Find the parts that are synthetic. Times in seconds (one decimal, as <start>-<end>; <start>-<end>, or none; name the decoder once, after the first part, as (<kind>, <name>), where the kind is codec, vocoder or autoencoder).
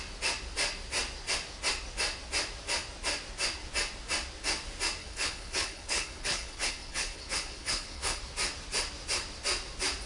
5.0-8.2 (codec, HILCodec)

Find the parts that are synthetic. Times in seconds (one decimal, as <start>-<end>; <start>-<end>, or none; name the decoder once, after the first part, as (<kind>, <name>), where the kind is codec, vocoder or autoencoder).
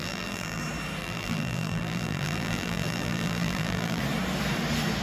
0.0-0.6 (vocoder, BigVGAN v2); 1.0-4.0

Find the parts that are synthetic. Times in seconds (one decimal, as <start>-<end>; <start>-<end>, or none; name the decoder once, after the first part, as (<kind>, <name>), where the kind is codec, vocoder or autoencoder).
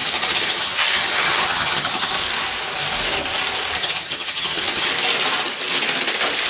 0.0-2.1 (vocoder, HiFi-GAN); 3.8-4.9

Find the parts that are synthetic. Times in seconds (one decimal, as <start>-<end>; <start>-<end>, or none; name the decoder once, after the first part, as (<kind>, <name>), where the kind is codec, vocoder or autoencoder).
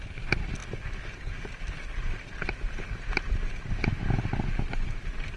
none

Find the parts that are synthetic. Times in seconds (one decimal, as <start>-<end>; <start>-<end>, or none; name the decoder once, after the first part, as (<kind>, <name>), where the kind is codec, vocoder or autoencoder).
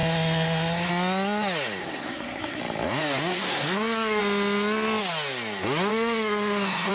0.0-0.9 (codec, SNAC); 1.8-2.6; 3.3-4.2; 5.9-6.9